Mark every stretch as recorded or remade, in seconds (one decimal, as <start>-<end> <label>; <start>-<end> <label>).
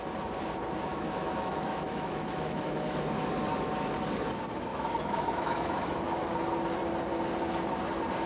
0.0-0.9 recorded; 0.9-3.2 remade; 3.2-4.7 recorded; 4.7-6.2 remade; 6.2-8.3 recorded